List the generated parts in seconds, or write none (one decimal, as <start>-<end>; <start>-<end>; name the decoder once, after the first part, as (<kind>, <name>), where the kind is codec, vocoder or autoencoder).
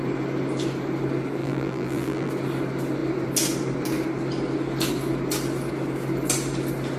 1.4-2.3 (vocoder, BigVGAN v2)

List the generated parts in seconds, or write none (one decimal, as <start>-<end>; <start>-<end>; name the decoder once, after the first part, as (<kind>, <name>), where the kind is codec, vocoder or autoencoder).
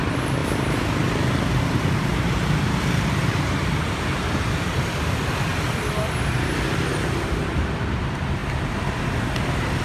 0.4-4.9 (vocoder, BigVGAN v2)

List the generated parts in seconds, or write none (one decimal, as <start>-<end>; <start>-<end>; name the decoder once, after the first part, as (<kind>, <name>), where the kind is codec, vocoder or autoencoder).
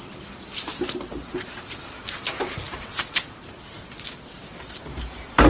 none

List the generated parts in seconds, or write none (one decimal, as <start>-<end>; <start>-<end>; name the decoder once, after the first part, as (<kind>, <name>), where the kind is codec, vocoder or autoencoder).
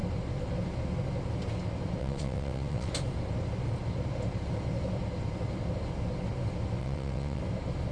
2.0-2.9 (vocoder, WaveNeXt); 6.8-7.4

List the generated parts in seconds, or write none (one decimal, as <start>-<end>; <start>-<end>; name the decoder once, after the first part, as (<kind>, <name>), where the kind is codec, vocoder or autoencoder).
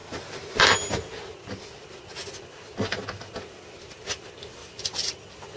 4.6-5.6 (vocoder, BigVGAN v2)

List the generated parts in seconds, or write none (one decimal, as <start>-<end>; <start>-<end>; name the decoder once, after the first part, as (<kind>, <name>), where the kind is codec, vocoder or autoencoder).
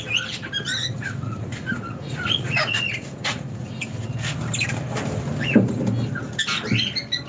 0.7-3.9 (vocoder, Vocos)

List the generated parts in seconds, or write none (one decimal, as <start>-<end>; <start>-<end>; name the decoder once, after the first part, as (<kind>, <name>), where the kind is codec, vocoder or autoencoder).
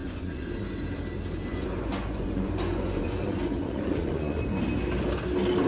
0.0-0.6 (vocoder, Vocos); 1.5-4.4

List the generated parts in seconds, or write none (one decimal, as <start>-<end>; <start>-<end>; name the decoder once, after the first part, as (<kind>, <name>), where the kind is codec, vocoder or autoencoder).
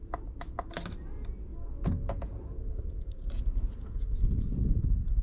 1.5-4.6 (vocoder, Vocos)